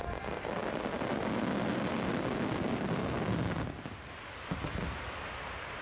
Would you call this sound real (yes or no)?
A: yes